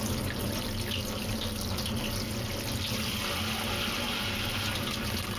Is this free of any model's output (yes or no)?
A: yes